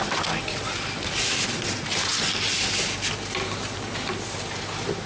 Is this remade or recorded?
recorded